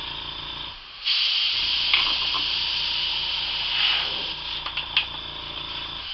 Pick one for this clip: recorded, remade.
recorded